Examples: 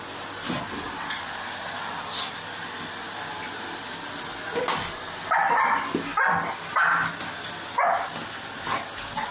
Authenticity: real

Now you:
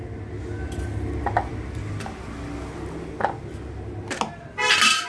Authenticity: real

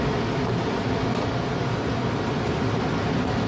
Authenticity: real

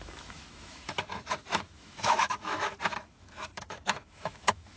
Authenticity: fake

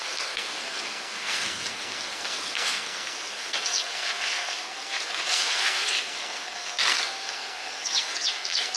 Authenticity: fake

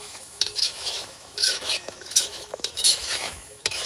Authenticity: fake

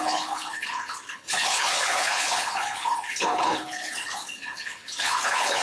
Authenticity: fake